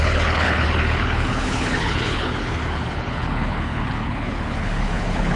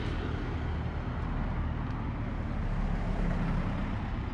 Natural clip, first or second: second